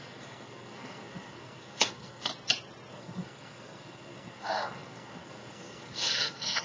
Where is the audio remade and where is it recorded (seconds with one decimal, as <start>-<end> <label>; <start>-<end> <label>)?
0.0-2.3 remade; 2.3-2.9 recorded; 2.9-6.6 remade